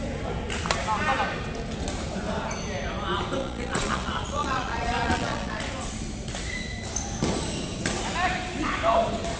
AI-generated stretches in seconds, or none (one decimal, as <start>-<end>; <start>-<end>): 3.4-5.6